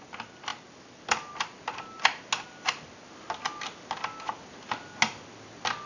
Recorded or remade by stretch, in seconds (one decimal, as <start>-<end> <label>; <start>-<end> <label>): 0.0-0.5 recorded; 0.5-1.3 remade; 1.3-5.9 recorded

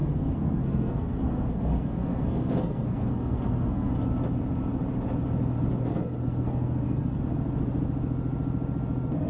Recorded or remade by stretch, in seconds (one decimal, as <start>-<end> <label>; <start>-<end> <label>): 0.0-3.9 remade; 3.9-5.9 recorded; 5.9-7.2 remade; 7.2-9.3 recorded

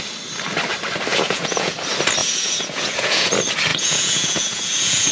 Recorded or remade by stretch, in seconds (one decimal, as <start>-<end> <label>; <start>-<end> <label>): 0.0-1.1 recorded; 1.1-1.8 remade; 1.8-2.2 recorded; 2.2-3.3 remade; 3.3-3.7 recorded; 3.7-5.1 remade

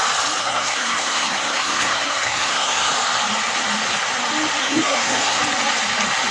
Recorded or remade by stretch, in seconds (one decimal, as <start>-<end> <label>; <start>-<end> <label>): 0.0-0.4 recorded; 0.4-2.9 remade; 2.9-4.6 recorded; 4.6-5.4 remade; 5.4-6.3 recorded